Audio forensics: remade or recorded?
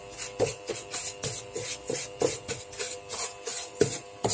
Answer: recorded